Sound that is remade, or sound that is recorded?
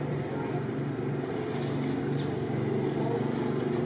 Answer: recorded